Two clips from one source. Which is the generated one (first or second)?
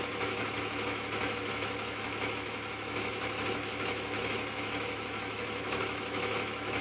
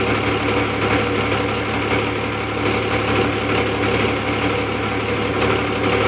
first